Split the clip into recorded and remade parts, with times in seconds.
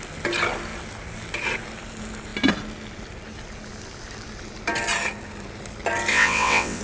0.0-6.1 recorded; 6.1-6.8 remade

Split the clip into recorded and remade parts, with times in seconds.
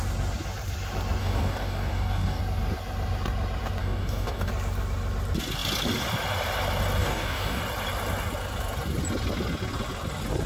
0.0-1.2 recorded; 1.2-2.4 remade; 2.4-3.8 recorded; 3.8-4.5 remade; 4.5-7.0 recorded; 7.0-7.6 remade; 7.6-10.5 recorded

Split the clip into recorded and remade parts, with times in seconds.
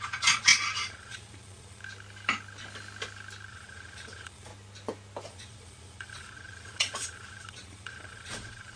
0.0-1.8 remade; 1.8-3.5 recorded; 3.5-4.5 remade; 4.5-5.3 recorded; 5.3-8.8 remade